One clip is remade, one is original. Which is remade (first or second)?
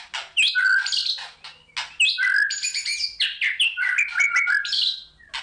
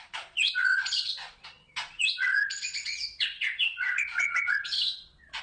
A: second